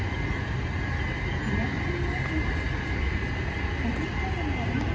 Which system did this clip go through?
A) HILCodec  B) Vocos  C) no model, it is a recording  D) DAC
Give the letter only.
C